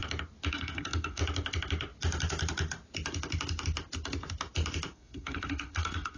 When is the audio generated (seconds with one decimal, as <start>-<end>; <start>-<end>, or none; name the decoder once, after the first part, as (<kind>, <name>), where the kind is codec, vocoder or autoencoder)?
0.5-1.2 (codec, SNAC); 4.9-6.2